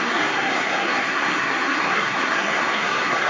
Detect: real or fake fake